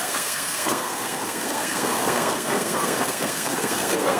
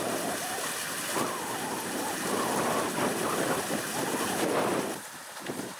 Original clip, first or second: second